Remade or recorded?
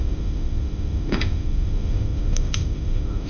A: remade